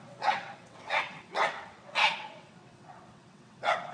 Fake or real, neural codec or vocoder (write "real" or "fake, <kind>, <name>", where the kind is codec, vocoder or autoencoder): fake, vocoder, WaveNeXt